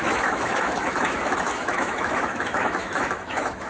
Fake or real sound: fake